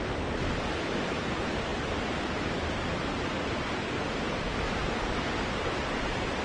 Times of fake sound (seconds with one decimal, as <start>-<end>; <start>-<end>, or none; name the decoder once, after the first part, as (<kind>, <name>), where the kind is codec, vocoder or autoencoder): none